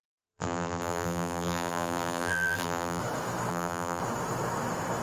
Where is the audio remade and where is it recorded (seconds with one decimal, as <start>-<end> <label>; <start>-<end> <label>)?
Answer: 0.0-3.0 remade; 3.0-3.5 recorded; 3.5-4.0 remade; 4.0-5.0 recorded